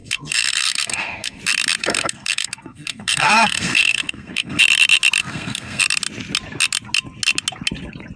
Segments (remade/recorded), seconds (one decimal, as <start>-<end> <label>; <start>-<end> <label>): 0.0-1.4 remade; 1.4-1.8 recorded; 1.8-4.6 remade; 4.6-5.2 recorded; 5.2-5.8 remade; 5.8-8.2 recorded